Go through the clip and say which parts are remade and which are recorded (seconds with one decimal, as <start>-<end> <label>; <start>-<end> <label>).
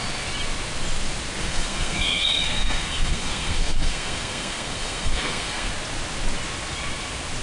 0.0-1.4 recorded; 1.4-5.7 remade; 5.7-7.4 recorded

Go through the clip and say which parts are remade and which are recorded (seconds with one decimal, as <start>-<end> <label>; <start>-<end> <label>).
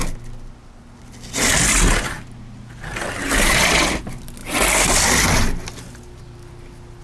0.0-7.0 recorded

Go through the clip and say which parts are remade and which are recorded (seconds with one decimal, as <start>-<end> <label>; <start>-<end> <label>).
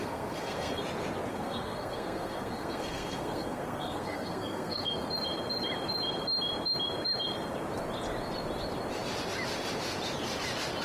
0.0-0.8 remade; 0.8-1.3 recorded; 1.3-4.9 remade; 4.9-10.8 recorded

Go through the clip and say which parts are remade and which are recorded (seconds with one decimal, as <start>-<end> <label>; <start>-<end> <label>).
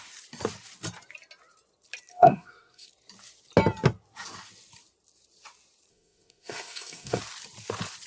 0.0-2.1 recorded; 2.1-2.9 remade; 2.9-5.9 recorded; 5.9-7.2 remade; 7.2-8.1 recorded